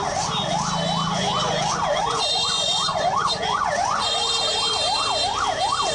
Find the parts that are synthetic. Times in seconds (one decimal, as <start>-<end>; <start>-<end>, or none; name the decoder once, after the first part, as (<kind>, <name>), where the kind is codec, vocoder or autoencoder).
1.9-4.3 (vocoder, Vocos)